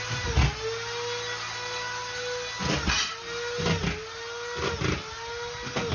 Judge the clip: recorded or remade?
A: recorded